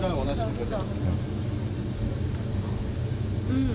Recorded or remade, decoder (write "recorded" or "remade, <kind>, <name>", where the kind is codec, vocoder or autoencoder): recorded